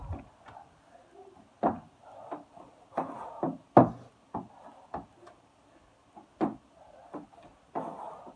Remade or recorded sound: recorded